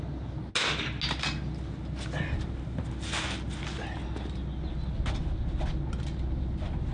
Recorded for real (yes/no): yes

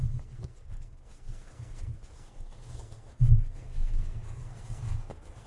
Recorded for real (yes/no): no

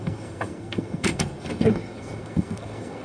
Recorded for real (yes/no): no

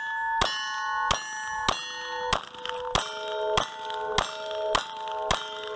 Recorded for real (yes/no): yes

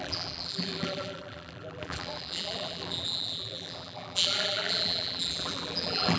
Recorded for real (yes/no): no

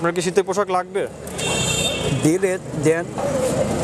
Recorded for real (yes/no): yes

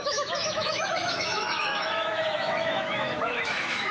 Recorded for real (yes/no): no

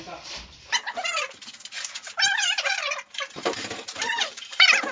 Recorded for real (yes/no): no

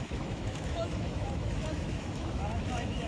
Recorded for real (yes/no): no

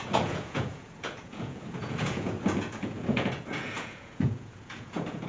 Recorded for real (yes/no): no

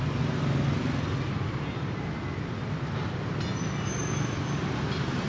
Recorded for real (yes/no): yes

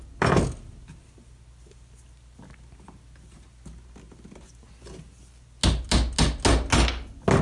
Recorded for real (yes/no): yes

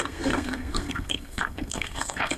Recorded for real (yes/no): no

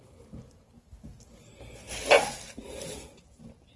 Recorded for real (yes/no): yes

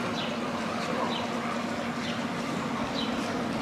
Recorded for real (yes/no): yes